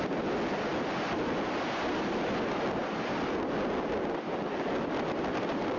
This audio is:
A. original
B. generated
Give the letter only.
A